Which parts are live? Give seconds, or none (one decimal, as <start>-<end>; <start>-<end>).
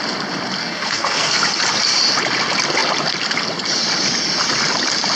0.0-0.6; 1.4-5.2